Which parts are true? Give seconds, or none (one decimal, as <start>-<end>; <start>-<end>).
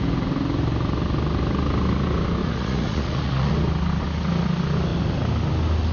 0.0-2.4; 3.5-5.9